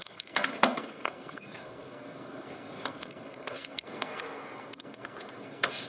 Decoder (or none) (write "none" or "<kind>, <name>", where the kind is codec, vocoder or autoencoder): codec, SNAC